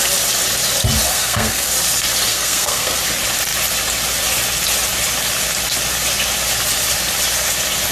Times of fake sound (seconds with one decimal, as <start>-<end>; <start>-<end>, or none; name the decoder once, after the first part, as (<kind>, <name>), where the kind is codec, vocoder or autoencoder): 1.1-1.7 (codec, SNAC); 2.3-3.0